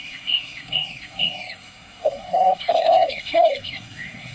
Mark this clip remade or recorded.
remade